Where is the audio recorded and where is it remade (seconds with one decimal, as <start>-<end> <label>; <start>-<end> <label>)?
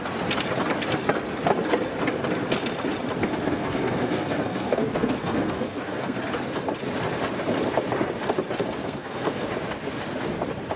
0.0-3.2 recorded; 3.2-6.2 remade; 6.2-8.8 recorded; 8.8-9.5 remade; 9.5-10.8 recorded